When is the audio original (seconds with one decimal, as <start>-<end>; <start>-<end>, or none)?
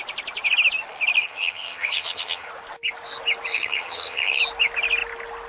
0.0-1.2; 2.5-3.5; 4.4-5.5